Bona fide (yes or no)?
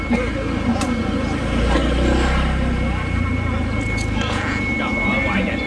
yes